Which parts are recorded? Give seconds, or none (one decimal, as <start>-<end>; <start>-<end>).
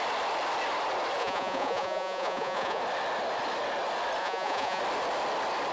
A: 0.0-1.2; 2.8-4.2; 4.8-5.7